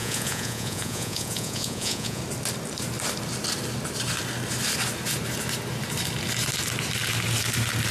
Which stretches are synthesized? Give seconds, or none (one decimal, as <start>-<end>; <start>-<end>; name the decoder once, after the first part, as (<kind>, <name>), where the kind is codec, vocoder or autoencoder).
0.0-2.2 (vocoder, Vocos)

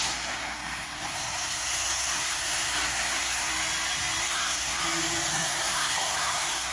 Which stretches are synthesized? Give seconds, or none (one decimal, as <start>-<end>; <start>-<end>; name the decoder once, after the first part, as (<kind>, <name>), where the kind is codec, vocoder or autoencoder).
0.0-3.5 (codec, SNAC); 4.2-4.8; 5.3-6.7

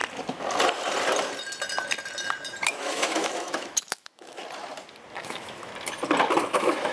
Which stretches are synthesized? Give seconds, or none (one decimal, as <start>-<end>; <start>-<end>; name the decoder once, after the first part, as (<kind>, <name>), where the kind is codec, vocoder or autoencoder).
2.7-4.4 (autoencoder, DAC-VAE); 5.2-5.7; 6.4-6.9

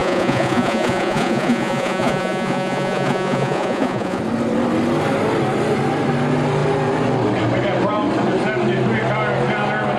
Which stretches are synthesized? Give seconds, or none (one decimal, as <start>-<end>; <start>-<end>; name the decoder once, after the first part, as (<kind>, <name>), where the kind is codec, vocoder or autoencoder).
0.0-4.2 (vocoder, Vocos)

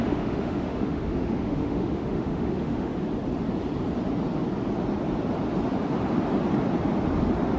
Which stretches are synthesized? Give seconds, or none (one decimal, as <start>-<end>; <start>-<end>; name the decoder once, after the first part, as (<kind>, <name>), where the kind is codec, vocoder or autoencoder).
0.0-2.9 (autoencoder, DAC-VAE)

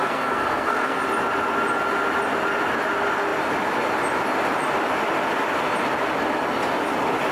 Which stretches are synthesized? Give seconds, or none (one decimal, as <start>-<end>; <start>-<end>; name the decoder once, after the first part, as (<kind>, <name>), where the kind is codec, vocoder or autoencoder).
0.0-1.0 (codec, SNAC)

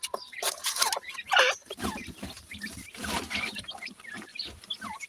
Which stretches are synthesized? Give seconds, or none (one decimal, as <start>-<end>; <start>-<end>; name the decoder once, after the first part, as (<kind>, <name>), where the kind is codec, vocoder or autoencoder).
0.0-2.0 (vocoder, BigVGAN v2); 3.3-4.3